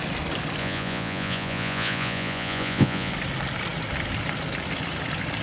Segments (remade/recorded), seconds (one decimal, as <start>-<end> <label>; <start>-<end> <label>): 0.0-0.6 recorded; 0.6-3.1 remade; 3.1-5.4 recorded